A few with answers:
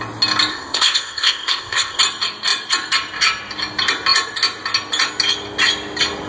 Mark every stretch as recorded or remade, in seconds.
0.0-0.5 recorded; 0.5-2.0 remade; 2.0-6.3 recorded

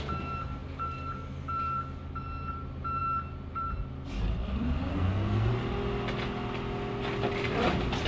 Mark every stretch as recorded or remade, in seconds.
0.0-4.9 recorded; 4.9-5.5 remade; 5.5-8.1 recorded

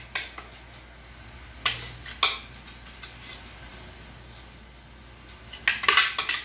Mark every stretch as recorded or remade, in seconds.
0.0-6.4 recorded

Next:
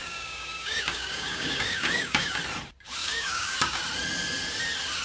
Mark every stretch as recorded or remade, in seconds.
0.0-2.4 remade; 2.4-3.0 recorded; 3.0-3.8 remade; 3.8-5.0 recorded

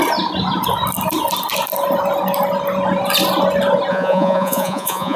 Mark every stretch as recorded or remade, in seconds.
0.0-3.9 recorded; 3.9-5.2 remade

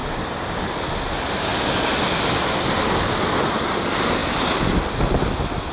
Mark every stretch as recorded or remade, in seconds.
0.0-5.7 recorded

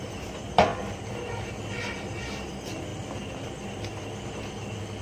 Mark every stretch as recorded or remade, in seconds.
0.0-2.9 recorded; 2.9-4.3 remade; 4.3-5.0 recorded